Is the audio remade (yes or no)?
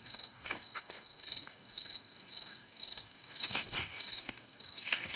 yes